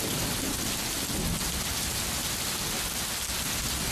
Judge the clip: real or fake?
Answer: real